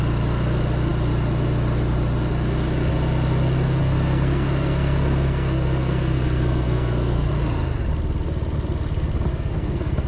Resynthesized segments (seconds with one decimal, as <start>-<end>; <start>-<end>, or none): 3.8-7.3; 9.3-10.1